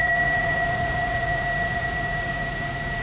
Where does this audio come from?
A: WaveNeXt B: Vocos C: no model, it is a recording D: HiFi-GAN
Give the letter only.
B